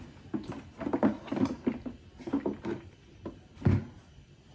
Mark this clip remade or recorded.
recorded